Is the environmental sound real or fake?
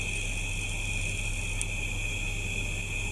real